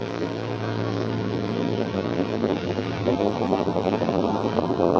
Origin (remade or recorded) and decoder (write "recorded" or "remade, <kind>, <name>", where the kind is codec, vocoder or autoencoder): remade, vocoder, BigVGAN v2